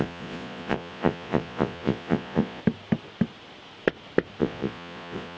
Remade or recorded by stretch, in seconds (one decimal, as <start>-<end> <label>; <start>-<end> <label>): 0.0-2.6 remade; 2.6-4.4 recorded; 4.4-5.4 remade